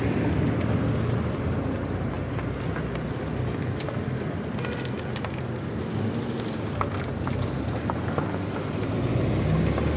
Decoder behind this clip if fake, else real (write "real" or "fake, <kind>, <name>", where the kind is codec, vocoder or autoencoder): real